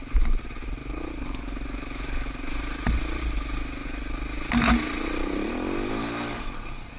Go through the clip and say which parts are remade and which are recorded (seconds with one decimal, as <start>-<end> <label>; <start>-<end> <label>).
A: 0.0-7.0 recorded

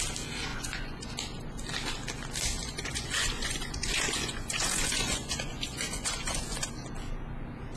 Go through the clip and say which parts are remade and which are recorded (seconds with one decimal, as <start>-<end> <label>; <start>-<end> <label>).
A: 0.0-0.5 recorded; 0.5-1.1 remade; 1.1-2.6 recorded; 2.6-6.7 remade; 6.7-7.8 recorded

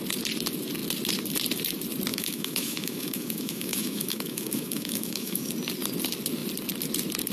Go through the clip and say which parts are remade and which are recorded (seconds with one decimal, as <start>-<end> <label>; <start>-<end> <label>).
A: 0.0-2.1 recorded; 2.1-5.5 remade; 5.5-7.3 recorded

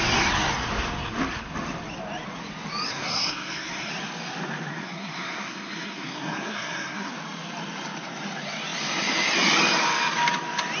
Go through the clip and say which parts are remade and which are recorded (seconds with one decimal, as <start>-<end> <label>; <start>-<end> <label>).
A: 0.0-2.9 recorded; 2.9-3.9 remade; 3.9-4.7 recorded; 4.7-7.1 remade; 7.1-10.8 recorded

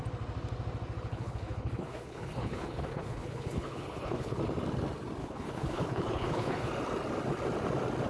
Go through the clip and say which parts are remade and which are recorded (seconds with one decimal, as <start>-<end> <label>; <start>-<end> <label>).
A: 0.0-1.1 recorded; 1.1-4.4 remade; 4.4-5.2 recorded; 5.2-6.7 remade; 6.7-8.1 recorded

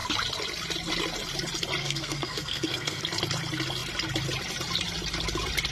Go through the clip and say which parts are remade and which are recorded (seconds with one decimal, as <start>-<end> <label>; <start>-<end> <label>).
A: 0.0-1.8 recorded; 1.8-3.0 remade; 3.0-5.7 recorded